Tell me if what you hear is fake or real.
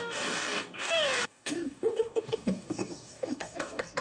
fake